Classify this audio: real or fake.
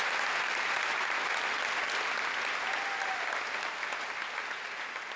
real